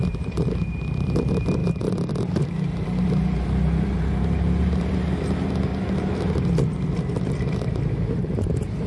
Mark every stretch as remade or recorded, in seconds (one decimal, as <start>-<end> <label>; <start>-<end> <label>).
0.0-5.7 remade; 5.7-8.1 recorded; 8.1-8.9 remade